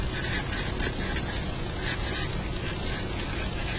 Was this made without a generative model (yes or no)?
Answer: yes